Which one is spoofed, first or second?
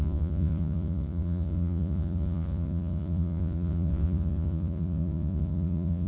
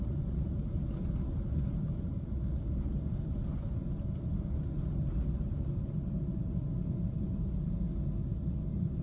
first